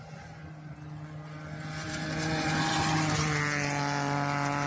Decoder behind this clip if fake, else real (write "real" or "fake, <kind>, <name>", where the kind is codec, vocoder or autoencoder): real